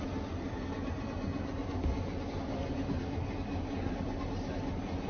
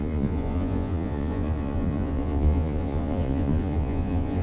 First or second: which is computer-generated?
second